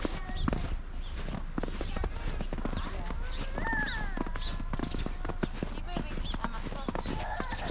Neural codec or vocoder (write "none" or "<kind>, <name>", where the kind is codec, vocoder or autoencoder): none